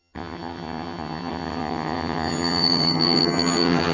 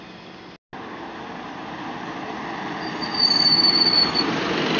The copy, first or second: first